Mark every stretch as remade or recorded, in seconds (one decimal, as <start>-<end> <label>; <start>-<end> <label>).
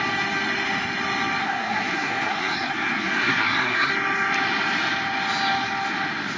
0.0-1.4 recorded; 1.4-3.9 remade; 3.9-6.4 recorded